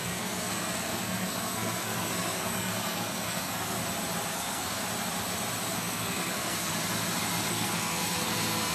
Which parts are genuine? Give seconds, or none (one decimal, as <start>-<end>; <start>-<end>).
3.8-4.3; 4.8-5.6; 6.7-7.5